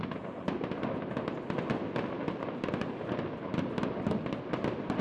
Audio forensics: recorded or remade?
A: recorded